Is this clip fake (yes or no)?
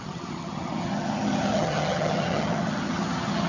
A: yes